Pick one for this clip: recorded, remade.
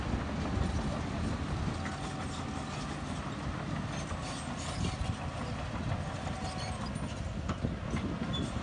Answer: recorded